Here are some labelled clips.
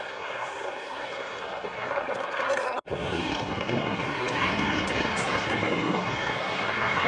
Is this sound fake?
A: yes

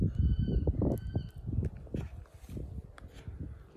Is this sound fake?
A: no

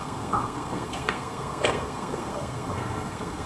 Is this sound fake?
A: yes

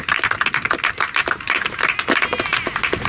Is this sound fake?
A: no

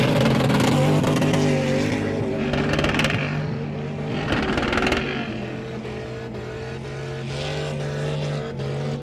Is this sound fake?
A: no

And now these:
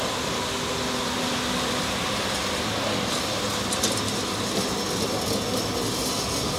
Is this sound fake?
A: no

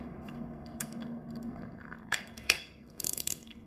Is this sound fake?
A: yes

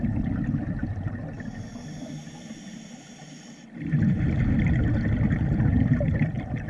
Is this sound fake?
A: no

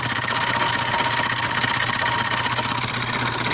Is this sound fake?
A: no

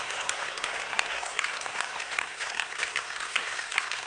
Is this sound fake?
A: yes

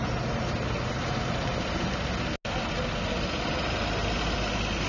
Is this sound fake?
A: no